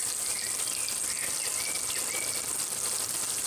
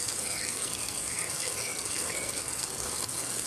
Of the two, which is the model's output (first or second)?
second